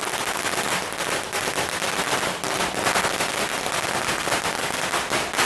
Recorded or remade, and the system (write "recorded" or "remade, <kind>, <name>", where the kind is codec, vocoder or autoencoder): recorded